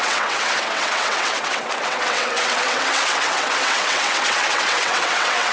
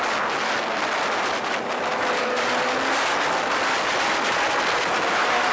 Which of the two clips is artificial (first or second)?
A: first